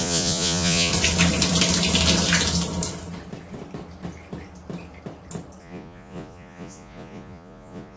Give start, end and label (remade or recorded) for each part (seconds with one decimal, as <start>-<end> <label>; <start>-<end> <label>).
0.0-0.9 remade; 0.9-5.6 recorded; 5.6-8.0 remade